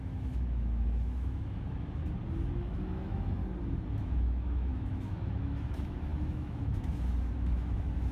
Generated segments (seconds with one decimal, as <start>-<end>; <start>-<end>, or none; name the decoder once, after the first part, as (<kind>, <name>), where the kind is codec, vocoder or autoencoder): 0.0-2.0 (autoencoder, DAC-VAE); 2.5-3.4; 3.9-8.1